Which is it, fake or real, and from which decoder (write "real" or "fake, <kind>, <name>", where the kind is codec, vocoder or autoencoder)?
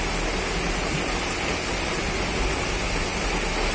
real